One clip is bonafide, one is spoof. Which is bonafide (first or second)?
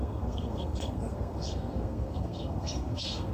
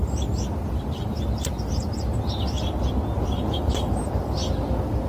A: second